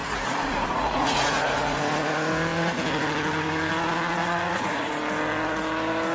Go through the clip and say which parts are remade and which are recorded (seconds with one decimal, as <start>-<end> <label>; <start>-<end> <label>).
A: 0.0-1.8 remade; 1.8-4.2 recorded; 4.2-4.9 remade; 4.9-6.1 recorded